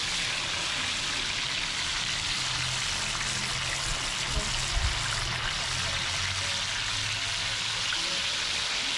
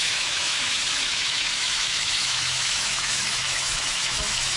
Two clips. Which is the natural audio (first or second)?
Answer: first